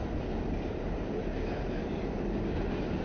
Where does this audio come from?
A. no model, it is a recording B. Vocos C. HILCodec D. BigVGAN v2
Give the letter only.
A